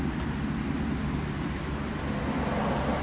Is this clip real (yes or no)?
yes